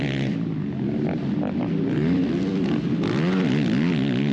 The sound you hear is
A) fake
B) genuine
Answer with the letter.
B